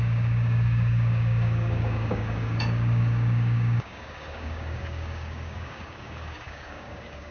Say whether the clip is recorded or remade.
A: remade